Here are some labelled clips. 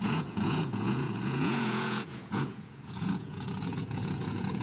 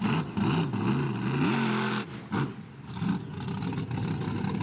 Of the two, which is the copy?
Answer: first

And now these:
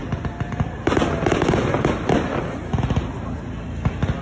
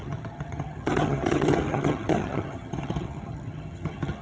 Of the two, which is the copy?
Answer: second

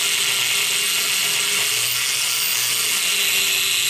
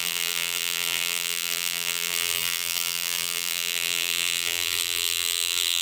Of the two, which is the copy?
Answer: second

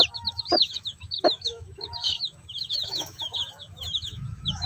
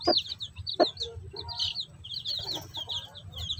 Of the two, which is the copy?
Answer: first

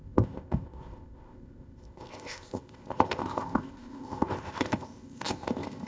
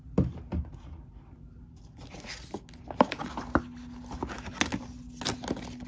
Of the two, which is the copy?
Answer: first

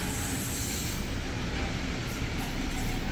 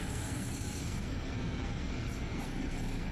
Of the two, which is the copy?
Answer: second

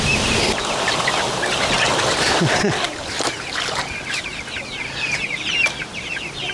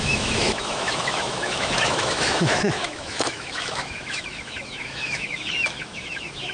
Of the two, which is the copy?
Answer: second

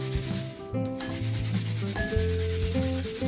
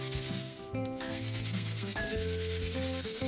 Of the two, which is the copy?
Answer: second